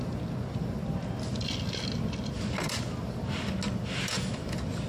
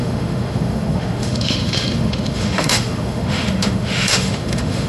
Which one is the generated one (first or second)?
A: second